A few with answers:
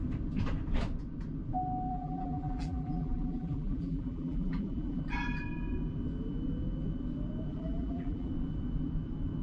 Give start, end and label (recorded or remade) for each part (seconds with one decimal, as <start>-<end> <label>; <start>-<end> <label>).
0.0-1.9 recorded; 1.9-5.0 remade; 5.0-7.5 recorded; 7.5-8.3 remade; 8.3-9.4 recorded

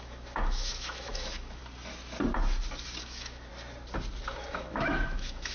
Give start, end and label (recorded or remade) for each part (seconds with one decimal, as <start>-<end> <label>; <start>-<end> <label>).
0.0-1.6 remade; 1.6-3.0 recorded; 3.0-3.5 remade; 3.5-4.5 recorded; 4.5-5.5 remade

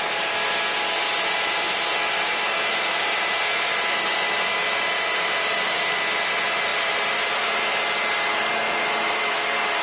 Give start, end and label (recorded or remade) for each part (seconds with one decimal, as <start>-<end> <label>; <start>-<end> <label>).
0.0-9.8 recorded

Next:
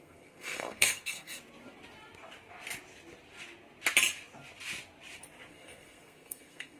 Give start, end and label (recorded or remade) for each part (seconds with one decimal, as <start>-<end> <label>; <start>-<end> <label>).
0.0-1.4 remade; 1.4-5.5 recorded; 5.5-6.8 remade

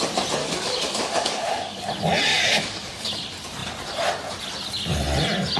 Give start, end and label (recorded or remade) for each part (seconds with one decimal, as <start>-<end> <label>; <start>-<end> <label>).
0.0-0.4 recorded; 0.4-1.9 remade; 1.9-2.3 recorded; 2.3-3.1 remade; 3.1-5.6 recorded

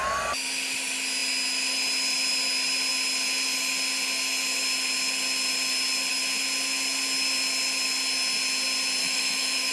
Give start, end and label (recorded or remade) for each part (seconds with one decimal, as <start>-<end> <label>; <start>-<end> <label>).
0.0-9.0 recorded; 9.0-9.7 remade

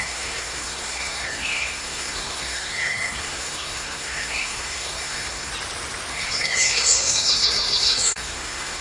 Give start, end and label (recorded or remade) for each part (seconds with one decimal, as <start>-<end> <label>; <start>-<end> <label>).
0.0-5.5 remade; 5.5-6.1 recorded; 6.1-8.8 remade